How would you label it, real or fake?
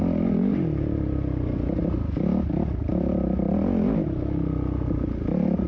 real